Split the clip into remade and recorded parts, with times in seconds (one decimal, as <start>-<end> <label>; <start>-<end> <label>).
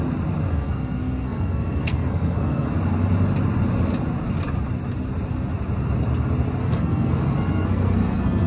0.0-0.5 recorded; 0.5-2.7 remade; 2.7-6.6 recorded; 6.6-8.5 remade